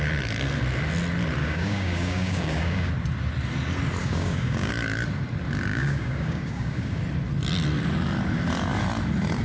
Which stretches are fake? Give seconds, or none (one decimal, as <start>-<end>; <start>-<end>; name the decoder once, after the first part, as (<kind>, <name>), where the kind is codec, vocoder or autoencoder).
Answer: 1.4-2.9 (codec, DAC); 4.0-4.7; 5.7-7.0